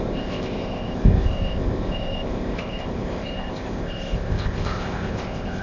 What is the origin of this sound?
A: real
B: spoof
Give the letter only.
B